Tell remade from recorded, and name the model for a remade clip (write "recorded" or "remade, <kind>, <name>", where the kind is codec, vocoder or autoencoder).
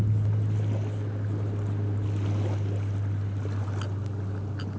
recorded